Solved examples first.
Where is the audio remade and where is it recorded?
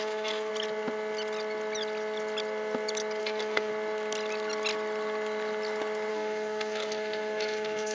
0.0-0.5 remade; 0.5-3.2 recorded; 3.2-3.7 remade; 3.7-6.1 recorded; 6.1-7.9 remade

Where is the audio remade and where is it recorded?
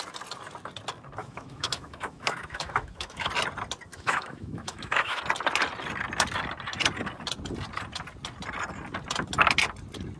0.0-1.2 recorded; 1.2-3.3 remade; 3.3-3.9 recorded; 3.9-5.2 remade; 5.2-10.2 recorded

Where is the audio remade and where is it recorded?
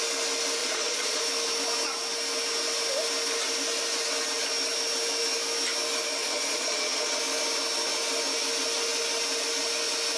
0.0-0.6 recorded; 0.6-1.2 remade; 1.2-6.2 recorded; 6.2-7.2 remade; 7.2-10.2 recorded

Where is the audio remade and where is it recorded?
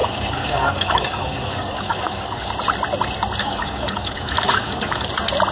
0.0-2.5 remade; 2.5-3.4 recorded; 3.4-5.1 remade; 5.1-5.5 recorded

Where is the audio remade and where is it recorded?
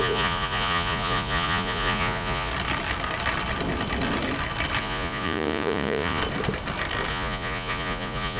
0.0-2.5 remade; 2.5-4.8 recorded; 4.8-6.2 remade; 6.2-7.1 recorded; 7.1-8.4 remade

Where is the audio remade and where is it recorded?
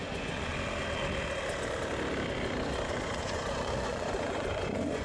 0.0-0.5 remade; 0.5-2.9 recorded; 2.9-5.0 remade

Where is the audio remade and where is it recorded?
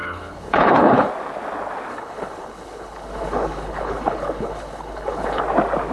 0.0-1.1 remade; 1.1-1.9 recorded; 1.9-5.4 remade; 5.4-5.9 recorded